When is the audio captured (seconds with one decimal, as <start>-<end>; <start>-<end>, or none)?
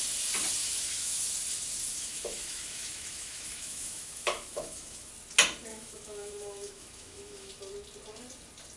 0.0-0.6; 1.2-1.9; 5.1-5.7; 7.5-8.8